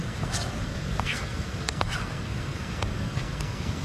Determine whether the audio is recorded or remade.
remade